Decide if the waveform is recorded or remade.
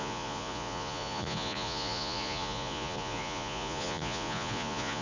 remade